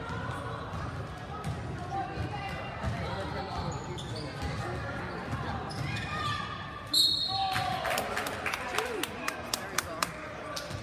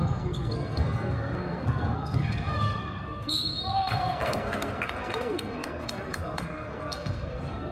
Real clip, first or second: first